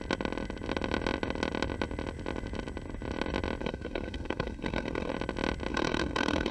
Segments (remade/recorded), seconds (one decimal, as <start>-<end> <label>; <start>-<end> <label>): 0.0-3.6 recorded; 3.6-5.1 remade; 5.1-5.7 recorded; 5.7-6.5 remade